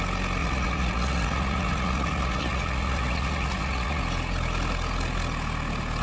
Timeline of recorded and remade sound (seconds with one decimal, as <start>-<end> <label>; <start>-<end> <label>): 0.0-0.4 recorded; 0.4-4.0 remade; 4.0-6.0 recorded